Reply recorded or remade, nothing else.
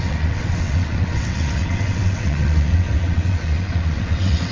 remade